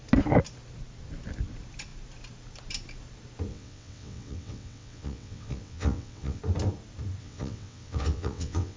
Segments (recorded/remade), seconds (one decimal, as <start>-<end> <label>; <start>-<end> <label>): 0.0-3.5 recorded; 3.5-6.4 remade; 6.4-7.2 recorded; 7.2-8.8 remade